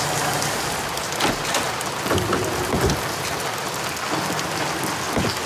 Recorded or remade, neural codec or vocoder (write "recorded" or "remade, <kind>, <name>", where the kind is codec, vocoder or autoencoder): recorded